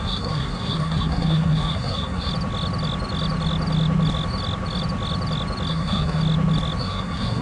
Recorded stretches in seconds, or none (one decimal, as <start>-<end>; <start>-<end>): 2.3-5.7; 6.2-6.8